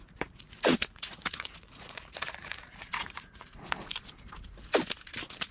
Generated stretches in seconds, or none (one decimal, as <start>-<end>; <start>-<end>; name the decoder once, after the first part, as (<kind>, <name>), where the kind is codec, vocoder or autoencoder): 0.0-3.9 (vocoder, Vocos)